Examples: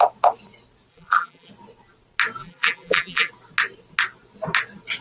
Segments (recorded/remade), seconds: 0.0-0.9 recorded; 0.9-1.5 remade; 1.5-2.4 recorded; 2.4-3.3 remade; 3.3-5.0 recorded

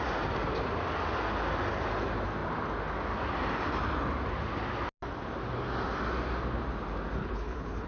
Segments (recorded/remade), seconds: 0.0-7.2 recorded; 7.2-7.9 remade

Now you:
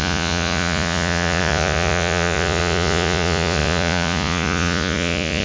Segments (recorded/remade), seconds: 0.0-5.4 remade

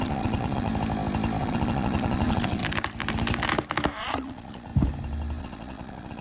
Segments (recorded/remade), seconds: 0.0-0.7 remade; 0.7-1.4 recorded; 1.4-2.6 remade; 2.6-4.0 recorded; 4.0-4.7 remade; 4.7-5.4 recorded; 5.4-6.2 remade